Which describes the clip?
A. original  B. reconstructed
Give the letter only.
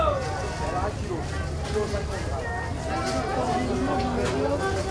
A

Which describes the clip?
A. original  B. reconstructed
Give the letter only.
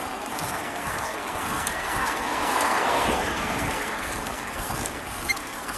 B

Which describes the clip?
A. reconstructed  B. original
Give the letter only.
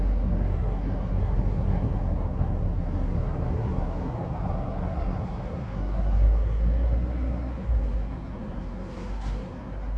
A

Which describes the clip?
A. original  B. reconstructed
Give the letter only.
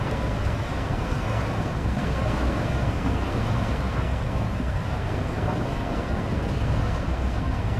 B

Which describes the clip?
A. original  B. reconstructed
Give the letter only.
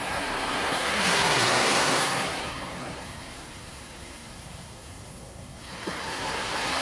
B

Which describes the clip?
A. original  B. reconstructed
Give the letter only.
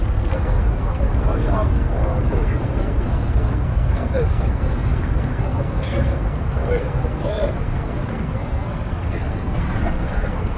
B